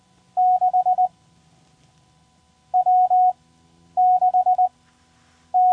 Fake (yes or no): no